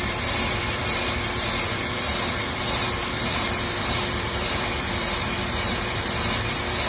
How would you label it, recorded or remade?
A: remade